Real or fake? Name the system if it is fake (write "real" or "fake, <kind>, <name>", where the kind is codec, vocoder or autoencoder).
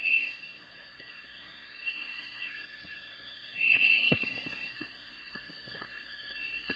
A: fake, codec, SNAC